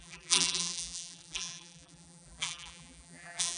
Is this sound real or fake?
fake